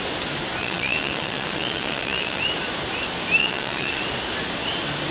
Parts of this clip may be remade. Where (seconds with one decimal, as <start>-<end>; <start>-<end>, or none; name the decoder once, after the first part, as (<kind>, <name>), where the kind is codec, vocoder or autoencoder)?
0.6-2.4 (vocoder, WaveNeXt); 3.4-4.0